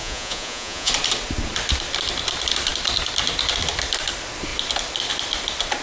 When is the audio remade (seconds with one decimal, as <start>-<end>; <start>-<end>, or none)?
0.0-0.9